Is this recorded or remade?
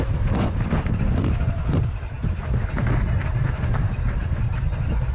recorded